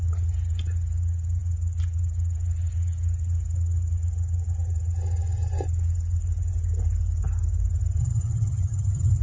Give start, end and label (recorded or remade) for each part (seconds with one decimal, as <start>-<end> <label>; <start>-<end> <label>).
0.0-8.0 recorded; 8.0-9.2 remade